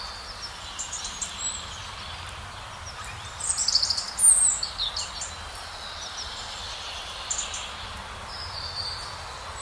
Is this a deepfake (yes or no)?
no